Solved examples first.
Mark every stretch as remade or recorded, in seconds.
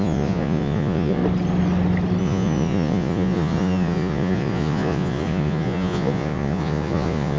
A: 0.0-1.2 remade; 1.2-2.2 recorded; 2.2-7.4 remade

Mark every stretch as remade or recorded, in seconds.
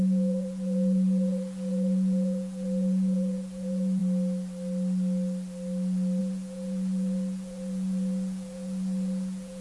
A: 0.0-4.0 remade; 4.0-6.2 recorded; 6.2-9.6 remade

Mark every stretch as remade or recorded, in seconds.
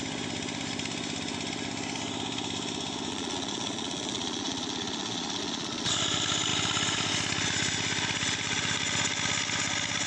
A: 0.0-3.1 recorded; 3.1-5.9 remade; 5.9-10.1 recorded